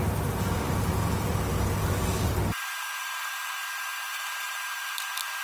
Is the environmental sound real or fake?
real